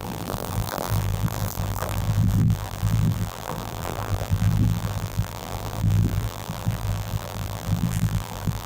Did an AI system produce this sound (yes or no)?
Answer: yes